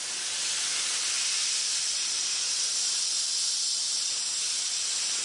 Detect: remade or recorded recorded